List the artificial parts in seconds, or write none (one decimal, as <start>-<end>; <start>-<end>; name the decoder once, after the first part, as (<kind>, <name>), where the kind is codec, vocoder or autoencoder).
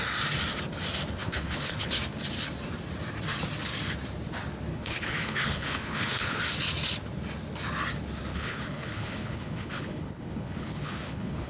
1.2-2.0 (codec, HILCodec); 4.7-6.4; 8.3-11.5